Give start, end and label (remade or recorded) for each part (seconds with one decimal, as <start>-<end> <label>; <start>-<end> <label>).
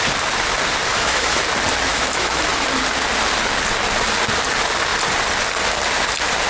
0.0-0.9 recorded; 0.9-1.4 remade; 1.4-1.9 recorded; 1.9-2.5 remade; 2.5-6.5 recorded